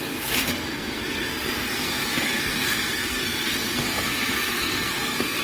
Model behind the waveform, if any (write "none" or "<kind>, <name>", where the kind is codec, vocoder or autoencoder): codec, SNAC